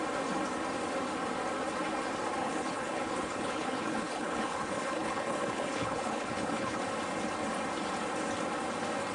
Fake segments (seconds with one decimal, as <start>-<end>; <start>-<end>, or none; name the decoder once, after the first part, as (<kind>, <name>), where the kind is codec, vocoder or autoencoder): 2.4-6.8 (codec, HILCodec)